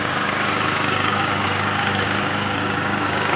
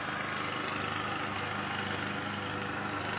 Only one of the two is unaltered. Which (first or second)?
second